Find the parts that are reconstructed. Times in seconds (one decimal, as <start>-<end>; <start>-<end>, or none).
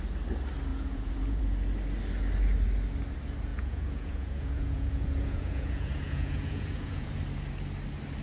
0.7-1.4; 3.5-7.1